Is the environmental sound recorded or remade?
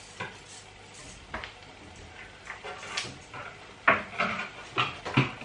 recorded